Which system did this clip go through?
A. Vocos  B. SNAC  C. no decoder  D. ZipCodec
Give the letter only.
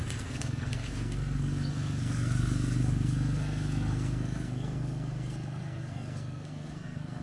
B